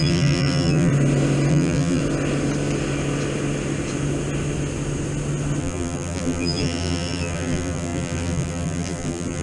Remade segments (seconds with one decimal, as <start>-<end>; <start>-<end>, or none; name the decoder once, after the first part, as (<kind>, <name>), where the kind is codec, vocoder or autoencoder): 0.0-0.9 (vocoder, BigVGAN v2); 1.5-2.0; 5.6-9.4